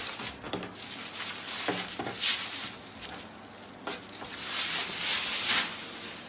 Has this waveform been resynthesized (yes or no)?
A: no